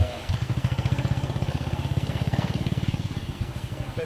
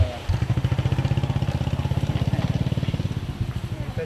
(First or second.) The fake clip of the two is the first